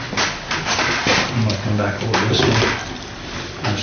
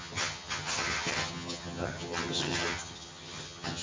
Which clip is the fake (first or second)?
second